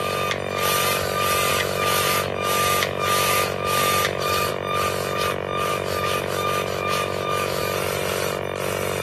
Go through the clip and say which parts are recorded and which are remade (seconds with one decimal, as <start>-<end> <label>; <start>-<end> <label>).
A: 0.0-1.5 recorded; 1.5-4.5 remade; 4.5-5.7 recorded; 5.7-7.6 remade; 7.6-9.0 recorded